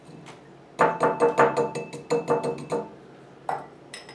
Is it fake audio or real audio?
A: real